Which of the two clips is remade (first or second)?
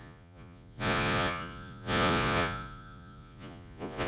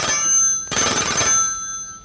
first